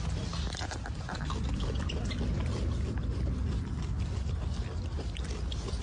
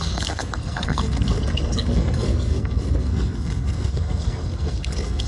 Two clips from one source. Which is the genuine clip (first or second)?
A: first